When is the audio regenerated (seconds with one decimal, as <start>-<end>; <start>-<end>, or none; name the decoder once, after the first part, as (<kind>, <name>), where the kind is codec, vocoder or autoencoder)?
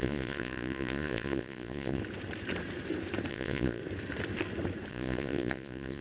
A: 0.0-2.0 (vocoder, Vocos); 3.3-3.8; 4.9-6.0